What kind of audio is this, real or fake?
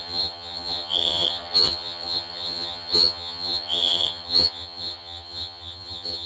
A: fake